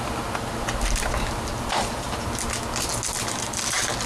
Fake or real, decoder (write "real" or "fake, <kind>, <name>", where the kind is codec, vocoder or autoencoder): real